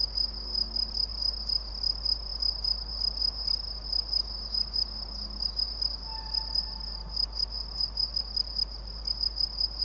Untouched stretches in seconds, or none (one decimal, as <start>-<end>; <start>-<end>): 0.0-9.8